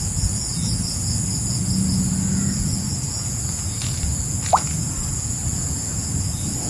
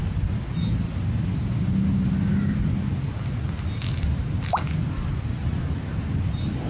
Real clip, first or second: second